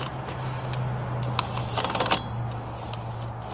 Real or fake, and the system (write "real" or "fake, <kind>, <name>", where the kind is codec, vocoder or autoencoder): real